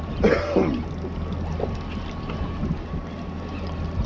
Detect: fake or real real